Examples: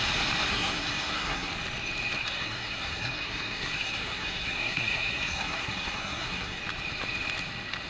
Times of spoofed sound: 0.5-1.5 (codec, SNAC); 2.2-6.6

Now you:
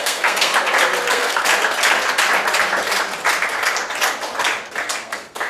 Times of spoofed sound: 0.0-0.5 (codec, SNAC); 1.1-1.5; 4.8-5.5

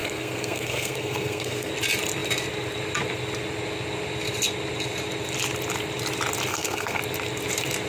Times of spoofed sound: 0.0-1.7 (codec, SNAC); 6.5-7.0

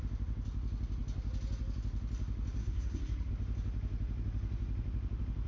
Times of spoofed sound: 2.6-3.3 (codec, SNAC)

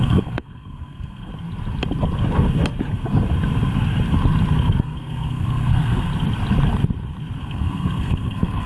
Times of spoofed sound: 0.0-1.3 (codec, SNAC); 4.8-6.1; 7.4-8.7

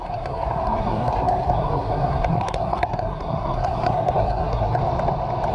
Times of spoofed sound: 0.0-4.8 (codec, SNAC)